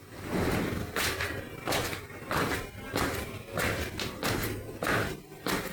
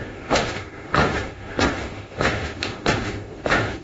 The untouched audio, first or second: first